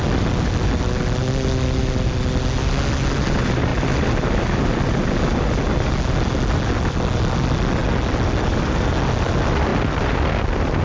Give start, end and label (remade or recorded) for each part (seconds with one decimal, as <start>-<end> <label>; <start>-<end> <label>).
0.0-10.8 recorded